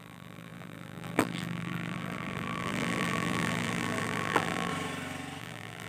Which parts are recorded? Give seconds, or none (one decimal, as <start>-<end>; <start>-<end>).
4.7-5.4